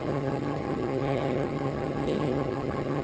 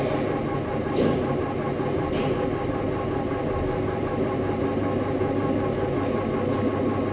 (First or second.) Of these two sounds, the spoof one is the first